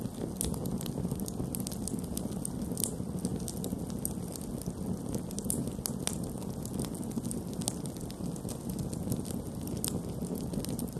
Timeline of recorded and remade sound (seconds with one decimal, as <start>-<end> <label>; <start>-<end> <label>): 0.0-11.0 recorded